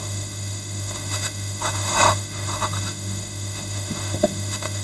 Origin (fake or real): fake